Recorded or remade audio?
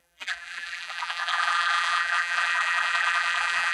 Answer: remade